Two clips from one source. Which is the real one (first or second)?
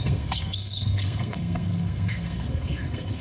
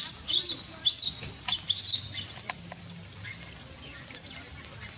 second